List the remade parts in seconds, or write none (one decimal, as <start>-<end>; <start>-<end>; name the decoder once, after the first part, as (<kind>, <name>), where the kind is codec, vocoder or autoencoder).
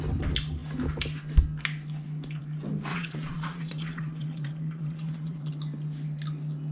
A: 2.9-5.5 (vocoder, Vocos)